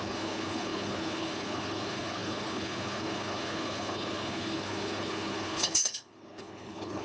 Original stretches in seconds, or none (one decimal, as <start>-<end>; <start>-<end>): none